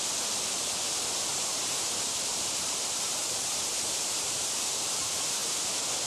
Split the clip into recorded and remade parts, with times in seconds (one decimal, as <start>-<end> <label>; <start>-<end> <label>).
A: 0.0-1.3 recorded; 1.3-5.0 remade; 5.0-6.1 recorded